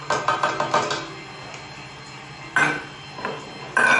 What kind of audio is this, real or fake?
real